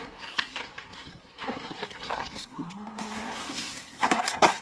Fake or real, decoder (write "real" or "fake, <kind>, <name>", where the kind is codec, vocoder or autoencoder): fake, codec, SNAC